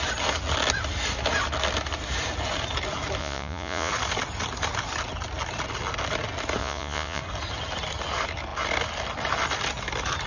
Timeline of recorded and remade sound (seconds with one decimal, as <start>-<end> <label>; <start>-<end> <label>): 0.0-3.2 recorded; 3.2-3.9 remade; 3.9-6.6 recorded; 6.6-7.2 remade; 7.2-10.3 recorded